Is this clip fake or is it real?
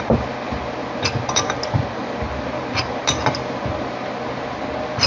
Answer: real